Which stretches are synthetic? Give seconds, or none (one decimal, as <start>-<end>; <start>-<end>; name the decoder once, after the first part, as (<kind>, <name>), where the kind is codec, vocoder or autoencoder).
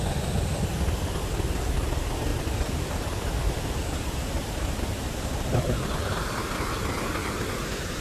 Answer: 2.3-6.4 (vocoder, BigVGAN v2); 7.2-8.0